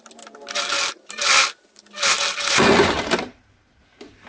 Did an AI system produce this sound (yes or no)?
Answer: no